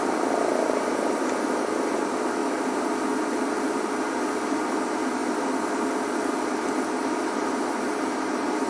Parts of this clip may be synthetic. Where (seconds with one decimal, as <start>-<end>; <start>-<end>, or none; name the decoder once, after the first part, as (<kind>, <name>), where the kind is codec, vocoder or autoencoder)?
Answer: none